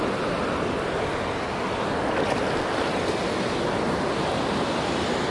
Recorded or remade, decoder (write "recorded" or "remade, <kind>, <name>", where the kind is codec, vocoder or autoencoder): recorded